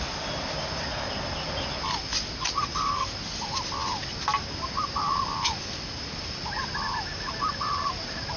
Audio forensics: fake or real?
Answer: real